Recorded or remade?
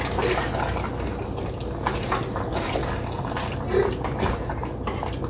recorded